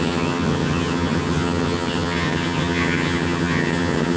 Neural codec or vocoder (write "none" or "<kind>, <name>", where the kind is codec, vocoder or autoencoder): vocoder, HiFi-GAN